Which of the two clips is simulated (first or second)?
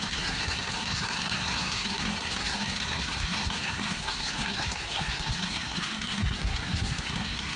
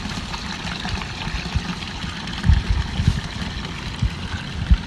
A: first